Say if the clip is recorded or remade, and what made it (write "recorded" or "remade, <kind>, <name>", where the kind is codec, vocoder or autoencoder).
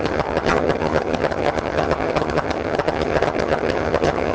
remade, vocoder, HiFi-GAN